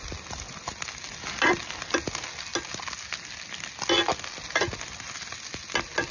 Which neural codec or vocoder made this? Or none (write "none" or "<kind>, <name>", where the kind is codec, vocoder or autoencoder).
none